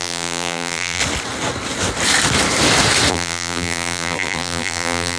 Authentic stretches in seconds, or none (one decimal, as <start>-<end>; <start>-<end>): 1.0-3.1